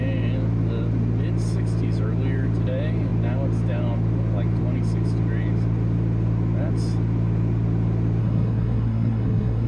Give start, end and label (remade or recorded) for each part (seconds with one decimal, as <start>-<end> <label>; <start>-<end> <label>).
0.0-8.2 recorded; 8.2-9.7 remade